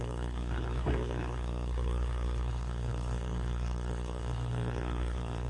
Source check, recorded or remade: remade